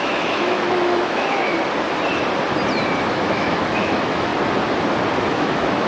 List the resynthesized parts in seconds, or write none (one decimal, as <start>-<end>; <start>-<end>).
0.0-1.5; 3.1-4.3; 5.2-5.9